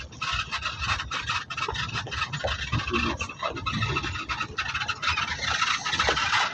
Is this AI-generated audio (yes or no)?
no